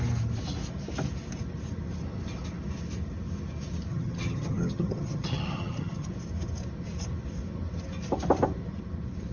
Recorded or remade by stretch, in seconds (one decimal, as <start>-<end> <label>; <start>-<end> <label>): 0.0-3.9 recorded; 3.9-6.1 remade; 6.1-9.3 recorded